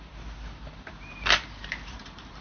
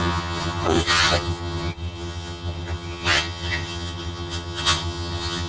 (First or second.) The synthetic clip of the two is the second